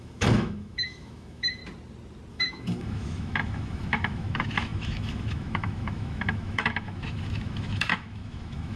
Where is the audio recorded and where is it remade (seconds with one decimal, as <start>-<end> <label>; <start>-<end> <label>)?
0.0-1.6 remade; 1.6-2.3 recorded; 2.3-8.8 remade